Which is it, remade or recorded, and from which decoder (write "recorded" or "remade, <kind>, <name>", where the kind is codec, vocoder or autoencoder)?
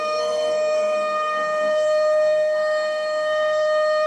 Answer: remade, codec, SNAC